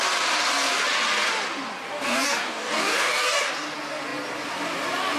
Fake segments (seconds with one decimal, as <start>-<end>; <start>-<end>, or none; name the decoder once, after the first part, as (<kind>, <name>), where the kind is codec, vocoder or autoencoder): 1.9-3.5 (codec, DAC)